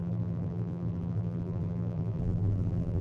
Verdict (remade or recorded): remade